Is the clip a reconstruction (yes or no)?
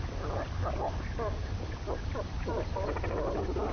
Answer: no